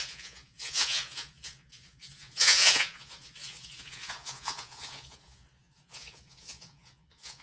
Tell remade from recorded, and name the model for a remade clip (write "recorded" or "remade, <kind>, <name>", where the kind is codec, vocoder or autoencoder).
remade, vocoder, Vocos